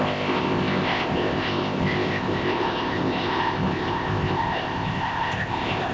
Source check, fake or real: fake